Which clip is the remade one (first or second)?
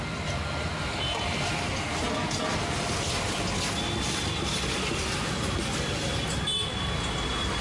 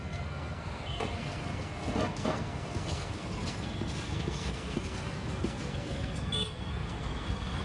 second